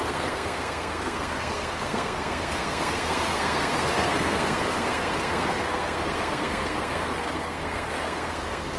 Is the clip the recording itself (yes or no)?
no